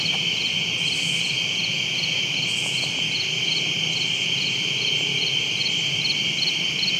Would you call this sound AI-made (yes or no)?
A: no